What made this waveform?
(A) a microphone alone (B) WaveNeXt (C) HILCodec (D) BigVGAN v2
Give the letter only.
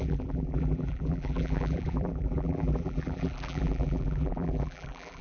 D